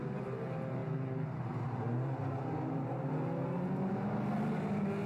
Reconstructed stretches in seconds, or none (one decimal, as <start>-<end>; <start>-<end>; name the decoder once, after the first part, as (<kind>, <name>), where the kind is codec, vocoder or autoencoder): none